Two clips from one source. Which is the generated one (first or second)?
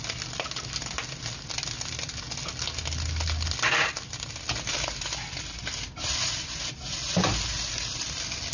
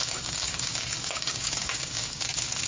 second